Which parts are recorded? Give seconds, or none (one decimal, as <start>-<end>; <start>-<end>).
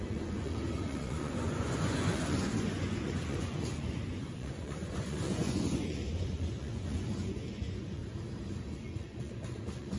8.0-8.7